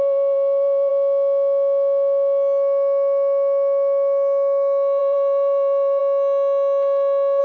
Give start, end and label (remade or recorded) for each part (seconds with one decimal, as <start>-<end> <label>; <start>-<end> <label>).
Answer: 0.0-0.9 remade; 0.9-5.0 recorded; 5.0-6.0 remade; 6.0-7.4 recorded